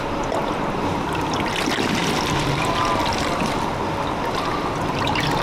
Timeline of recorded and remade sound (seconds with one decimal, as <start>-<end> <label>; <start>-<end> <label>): 0.0-5.4 remade